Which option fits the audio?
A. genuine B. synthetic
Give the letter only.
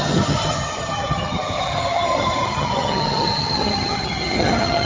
B